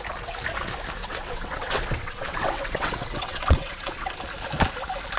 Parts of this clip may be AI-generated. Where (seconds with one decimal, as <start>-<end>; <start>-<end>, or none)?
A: 1.0-4.1